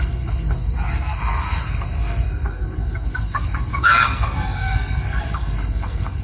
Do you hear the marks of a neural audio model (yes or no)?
yes